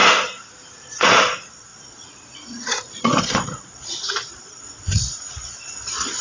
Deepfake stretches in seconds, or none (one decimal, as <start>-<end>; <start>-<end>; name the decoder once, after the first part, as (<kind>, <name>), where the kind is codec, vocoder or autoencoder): 0.8-6.2 (vocoder, Vocos)